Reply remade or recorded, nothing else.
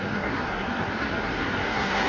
remade